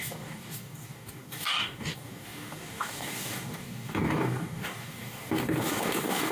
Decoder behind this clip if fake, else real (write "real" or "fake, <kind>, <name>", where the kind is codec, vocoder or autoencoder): fake, codec, DAC